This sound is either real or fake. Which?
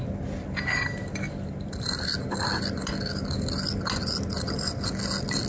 real